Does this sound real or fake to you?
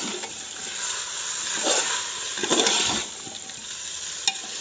real